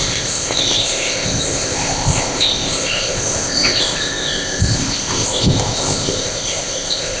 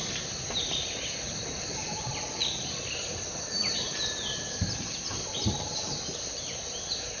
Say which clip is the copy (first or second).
first